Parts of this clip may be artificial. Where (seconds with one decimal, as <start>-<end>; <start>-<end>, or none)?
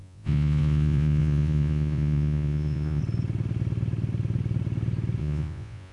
0.0-3.0; 5.2-5.9